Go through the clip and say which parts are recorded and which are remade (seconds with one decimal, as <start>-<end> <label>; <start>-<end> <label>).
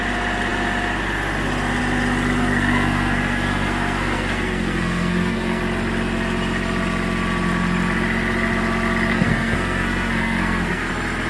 0.0-2.5 recorded; 2.5-5.6 remade; 5.6-9.1 recorded; 9.1-10.9 remade; 10.9-11.3 recorded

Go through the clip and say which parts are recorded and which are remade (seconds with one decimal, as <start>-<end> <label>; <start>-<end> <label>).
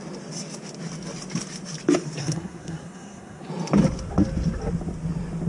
0.0-2.2 recorded; 2.2-3.5 remade; 3.5-5.5 recorded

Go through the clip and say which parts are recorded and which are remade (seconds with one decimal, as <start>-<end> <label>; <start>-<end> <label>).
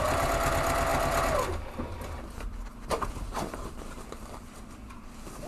0.0-5.5 recorded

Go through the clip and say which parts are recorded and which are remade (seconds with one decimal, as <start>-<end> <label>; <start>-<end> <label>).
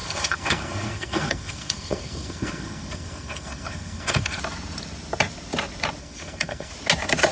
0.0-4.4 remade; 4.4-6.0 recorded; 6.0-6.7 remade; 6.7-7.3 recorded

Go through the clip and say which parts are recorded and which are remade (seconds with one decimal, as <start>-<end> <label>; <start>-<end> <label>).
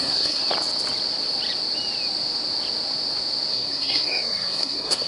0.0-0.4 remade; 0.4-3.5 recorded; 3.5-5.1 remade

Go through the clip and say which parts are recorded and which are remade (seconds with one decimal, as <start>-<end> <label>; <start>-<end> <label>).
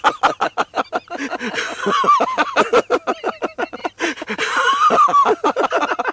0.0-6.1 recorded